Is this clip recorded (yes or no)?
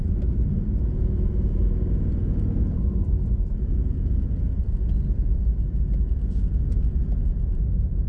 no